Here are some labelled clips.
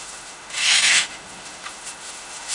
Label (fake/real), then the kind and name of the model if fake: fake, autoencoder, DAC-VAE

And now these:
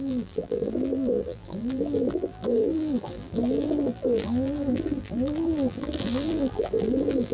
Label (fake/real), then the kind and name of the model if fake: fake, vocoder, BigVGAN v2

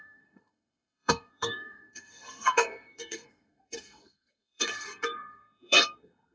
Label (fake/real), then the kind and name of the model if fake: fake, codec, SNAC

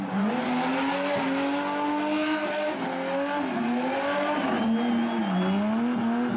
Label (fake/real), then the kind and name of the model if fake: real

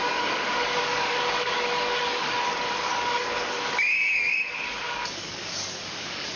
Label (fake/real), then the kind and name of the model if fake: fake, codec, DAC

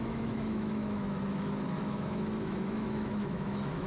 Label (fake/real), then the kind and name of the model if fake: fake, autoencoder, DAC-VAE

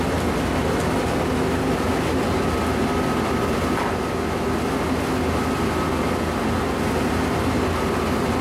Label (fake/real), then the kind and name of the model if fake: real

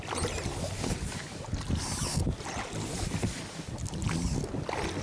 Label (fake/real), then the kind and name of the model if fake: real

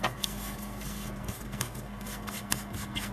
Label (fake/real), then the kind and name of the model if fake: fake, codec, SNAC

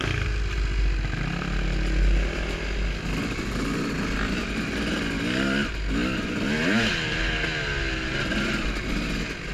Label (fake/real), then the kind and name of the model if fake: real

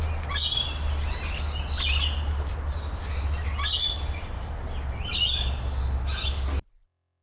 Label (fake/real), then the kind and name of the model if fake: real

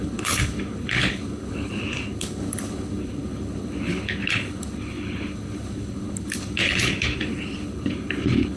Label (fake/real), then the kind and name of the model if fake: fake, codec, HILCodec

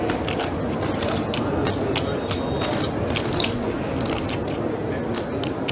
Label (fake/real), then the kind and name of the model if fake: real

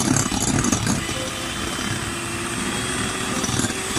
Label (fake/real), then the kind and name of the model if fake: real